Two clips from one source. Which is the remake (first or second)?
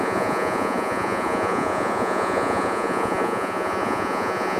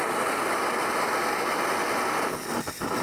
first